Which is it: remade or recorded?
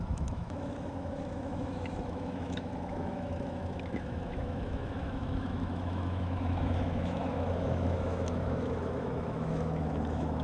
remade